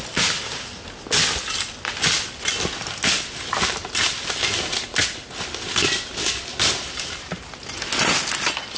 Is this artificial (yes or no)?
no